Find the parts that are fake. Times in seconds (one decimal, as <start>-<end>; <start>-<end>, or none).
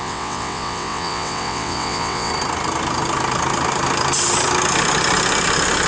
0.0-2.3